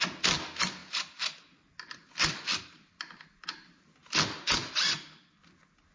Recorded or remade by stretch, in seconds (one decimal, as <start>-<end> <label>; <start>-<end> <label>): 0.0-5.9 recorded